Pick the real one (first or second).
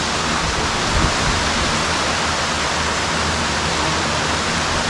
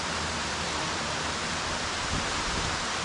first